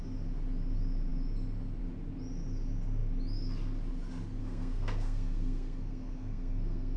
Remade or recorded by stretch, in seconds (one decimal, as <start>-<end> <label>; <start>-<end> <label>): 0.0-4.4 recorded; 4.4-7.0 remade